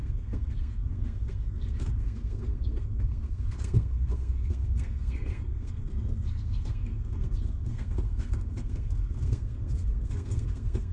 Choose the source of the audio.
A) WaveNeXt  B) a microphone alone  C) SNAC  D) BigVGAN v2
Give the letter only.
C